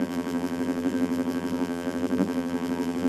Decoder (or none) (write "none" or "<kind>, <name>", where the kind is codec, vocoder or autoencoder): vocoder, BigVGAN v2